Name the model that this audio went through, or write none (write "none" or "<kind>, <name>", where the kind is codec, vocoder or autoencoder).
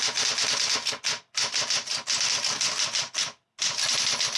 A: none